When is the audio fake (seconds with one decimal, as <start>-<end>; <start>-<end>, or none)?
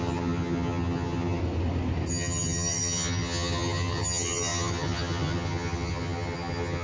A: 0.0-1.4; 2.1-6.8